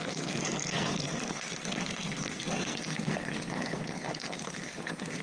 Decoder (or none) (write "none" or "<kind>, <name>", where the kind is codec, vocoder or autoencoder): codec, SNAC